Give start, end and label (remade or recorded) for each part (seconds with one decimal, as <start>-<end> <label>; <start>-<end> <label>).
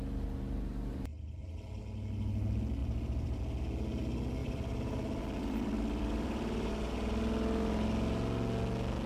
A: 0.0-1.1 recorded; 1.1-1.8 remade; 1.8-2.8 recorded; 2.8-3.4 remade; 3.4-4.4 recorded; 4.4-6.7 remade; 6.7-9.1 recorded